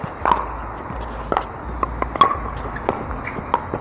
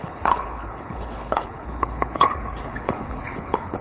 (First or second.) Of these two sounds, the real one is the first